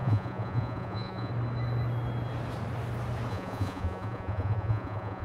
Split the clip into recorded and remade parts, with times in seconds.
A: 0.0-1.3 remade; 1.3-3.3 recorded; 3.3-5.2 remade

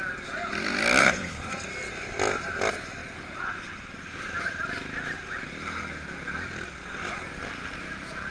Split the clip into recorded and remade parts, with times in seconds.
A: 0.0-1.0 recorded; 1.0-1.5 remade; 1.5-8.3 recorded

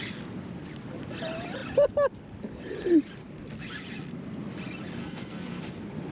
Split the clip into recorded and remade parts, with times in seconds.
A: 0.0-5.0 recorded; 5.0-5.6 remade; 5.6-6.1 recorded

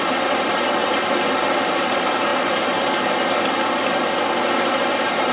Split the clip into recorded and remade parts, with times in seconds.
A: 0.0-5.3 recorded

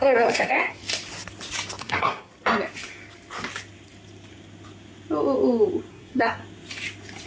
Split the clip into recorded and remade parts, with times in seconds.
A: 0.0-0.8 remade; 0.8-1.8 recorded; 1.8-2.3 remade; 2.3-5.9 recorded; 5.9-6.4 remade; 6.4-7.3 recorded